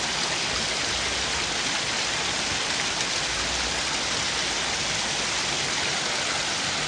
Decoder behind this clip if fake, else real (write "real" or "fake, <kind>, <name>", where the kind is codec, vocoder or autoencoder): real